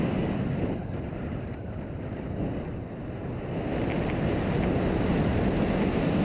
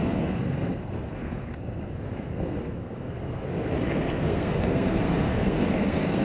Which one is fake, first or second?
second